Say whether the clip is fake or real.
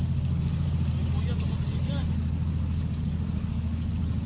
real